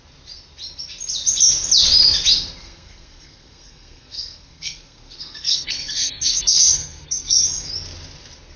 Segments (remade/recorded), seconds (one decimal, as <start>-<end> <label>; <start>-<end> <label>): 0.0-2.6 recorded; 2.6-7.7 remade; 7.7-8.6 recorded